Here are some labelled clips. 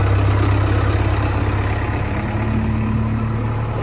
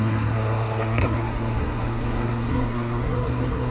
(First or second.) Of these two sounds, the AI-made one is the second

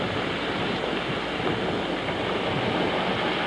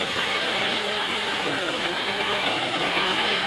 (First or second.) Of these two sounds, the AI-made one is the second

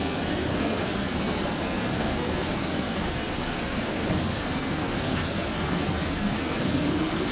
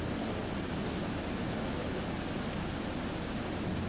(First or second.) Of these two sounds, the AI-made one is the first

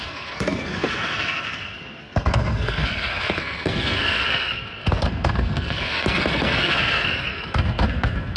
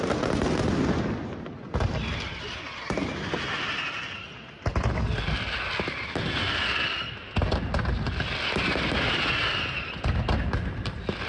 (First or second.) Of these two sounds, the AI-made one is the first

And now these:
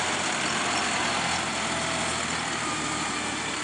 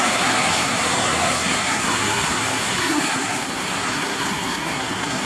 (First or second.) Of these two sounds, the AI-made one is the second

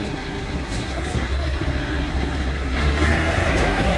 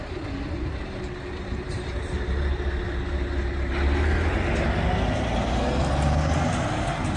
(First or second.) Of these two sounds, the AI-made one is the first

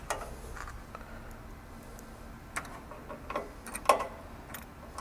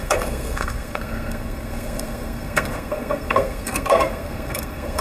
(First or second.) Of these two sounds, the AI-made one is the second